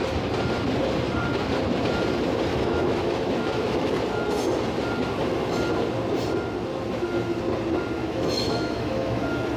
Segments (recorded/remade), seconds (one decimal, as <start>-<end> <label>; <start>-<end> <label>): 0.0-2.5 recorded; 2.5-3.9 remade; 3.9-8.0 recorded; 8.0-9.2 remade; 9.2-9.6 recorded